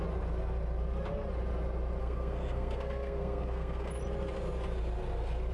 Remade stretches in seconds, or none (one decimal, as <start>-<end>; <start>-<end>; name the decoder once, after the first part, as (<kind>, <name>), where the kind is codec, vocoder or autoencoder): 2.0-3.9 (codec, SNAC)